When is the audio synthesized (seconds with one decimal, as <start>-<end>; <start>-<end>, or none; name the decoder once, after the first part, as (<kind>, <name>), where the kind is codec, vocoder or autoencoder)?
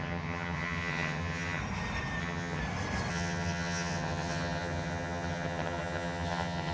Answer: 0.0-1.6 (vocoder, HiFi-GAN); 2.2-2.6; 3.1-6.7